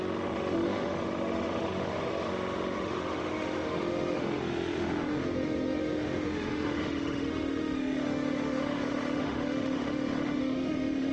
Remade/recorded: remade